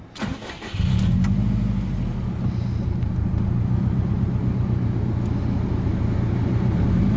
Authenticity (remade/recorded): recorded